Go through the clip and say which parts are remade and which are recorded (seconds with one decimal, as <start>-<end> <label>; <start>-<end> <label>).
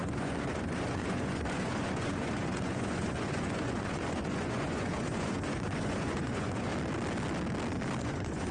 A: 0.0-6.7 remade; 6.7-8.0 recorded; 8.0-8.5 remade